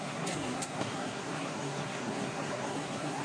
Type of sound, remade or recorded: remade